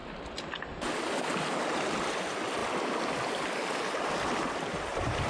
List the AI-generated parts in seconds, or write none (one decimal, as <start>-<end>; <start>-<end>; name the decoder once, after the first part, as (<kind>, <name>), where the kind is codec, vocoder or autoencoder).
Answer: none